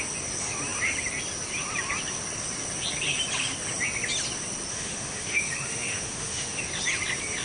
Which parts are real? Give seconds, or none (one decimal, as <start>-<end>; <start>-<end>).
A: 0.0-4.7; 6.6-7.4